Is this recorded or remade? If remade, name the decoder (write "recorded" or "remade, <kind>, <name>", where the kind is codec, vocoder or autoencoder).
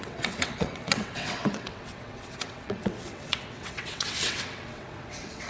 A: remade, vocoder, WaveNeXt